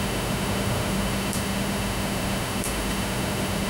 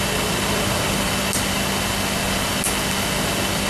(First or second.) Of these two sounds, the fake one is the first